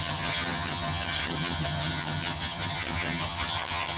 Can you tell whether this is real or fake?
fake